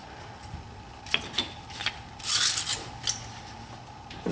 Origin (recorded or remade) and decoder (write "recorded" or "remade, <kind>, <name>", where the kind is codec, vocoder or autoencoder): recorded